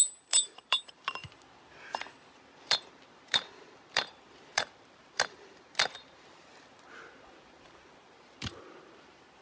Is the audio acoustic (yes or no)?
no